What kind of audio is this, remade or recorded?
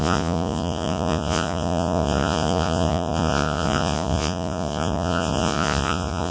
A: remade